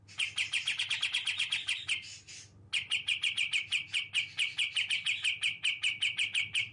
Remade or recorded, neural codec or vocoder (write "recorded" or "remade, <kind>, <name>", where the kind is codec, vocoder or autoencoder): recorded